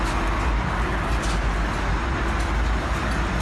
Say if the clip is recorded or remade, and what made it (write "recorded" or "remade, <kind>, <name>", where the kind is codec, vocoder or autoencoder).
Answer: recorded